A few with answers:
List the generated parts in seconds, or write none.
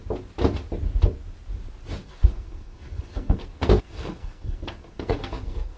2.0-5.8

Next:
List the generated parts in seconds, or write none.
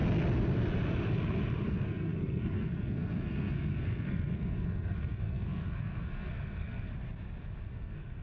1.7-6.9; 7.6-8.2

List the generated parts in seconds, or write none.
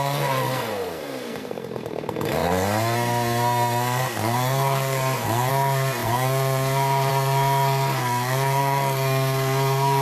0.0-10.0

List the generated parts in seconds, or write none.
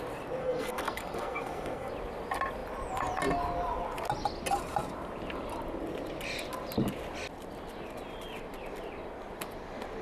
0.4-1.9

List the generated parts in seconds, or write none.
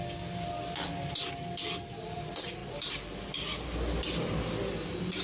none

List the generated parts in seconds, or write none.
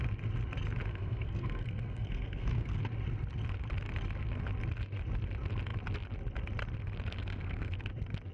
0.9-2.8; 7.3-7.9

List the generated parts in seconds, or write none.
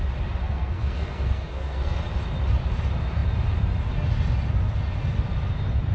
0.4-2.0